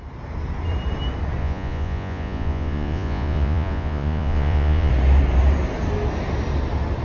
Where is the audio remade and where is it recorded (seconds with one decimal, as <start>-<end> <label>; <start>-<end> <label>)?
0.0-1.4 recorded; 1.4-4.9 remade; 4.9-7.0 recorded